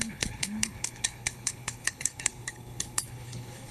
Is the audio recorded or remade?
remade